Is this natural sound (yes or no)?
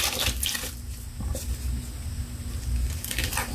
yes